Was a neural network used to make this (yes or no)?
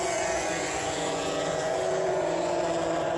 yes